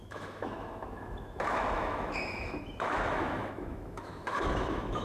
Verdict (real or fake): fake